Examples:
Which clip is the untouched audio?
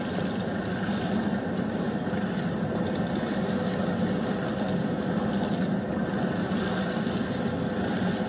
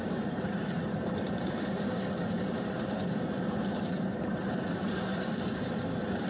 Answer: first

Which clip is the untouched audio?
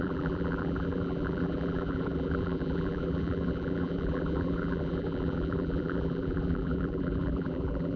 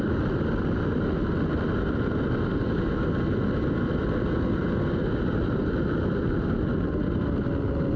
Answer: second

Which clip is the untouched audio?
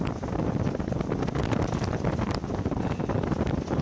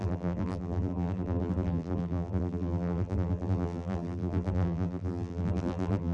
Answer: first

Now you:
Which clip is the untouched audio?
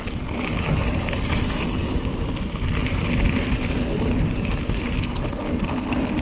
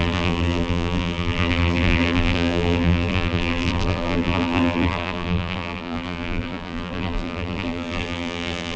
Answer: first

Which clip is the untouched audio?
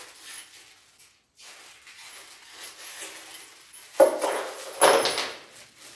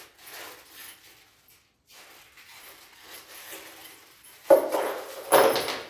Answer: first